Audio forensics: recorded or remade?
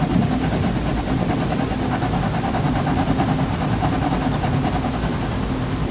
recorded